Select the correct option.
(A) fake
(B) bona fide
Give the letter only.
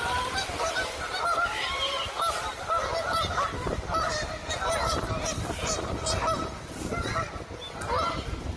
B